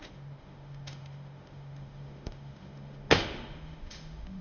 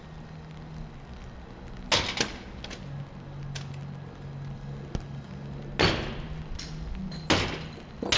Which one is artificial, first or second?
first